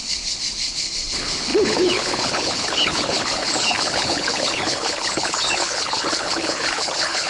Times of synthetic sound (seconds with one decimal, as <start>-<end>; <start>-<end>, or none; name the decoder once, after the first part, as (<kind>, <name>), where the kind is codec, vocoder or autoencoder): 0.0-7.3 (codec, HILCodec)